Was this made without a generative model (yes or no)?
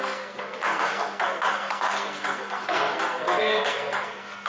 no